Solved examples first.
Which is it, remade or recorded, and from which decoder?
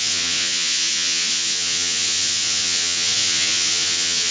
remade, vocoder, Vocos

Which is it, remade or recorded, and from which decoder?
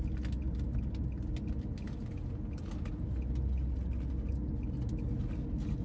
recorded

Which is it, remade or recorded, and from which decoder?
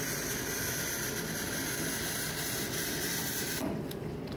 recorded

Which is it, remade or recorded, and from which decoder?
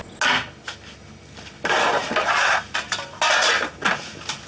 recorded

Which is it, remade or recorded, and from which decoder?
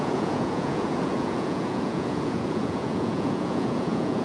remade, vocoder, Vocos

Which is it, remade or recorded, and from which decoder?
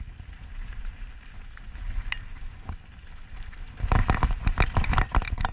recorded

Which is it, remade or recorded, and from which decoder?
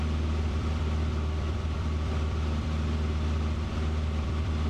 remade, vocoder, BigVGAN v2